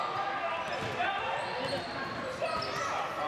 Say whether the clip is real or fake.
real